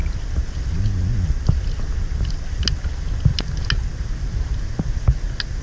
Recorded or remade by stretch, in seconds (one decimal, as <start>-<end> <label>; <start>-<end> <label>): 0.0-5.6 recorded